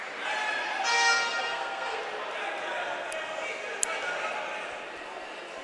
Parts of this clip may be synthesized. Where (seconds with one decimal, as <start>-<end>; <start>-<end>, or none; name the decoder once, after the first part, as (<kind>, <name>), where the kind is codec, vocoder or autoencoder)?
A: 0.9-2.0 (codec, SNAC)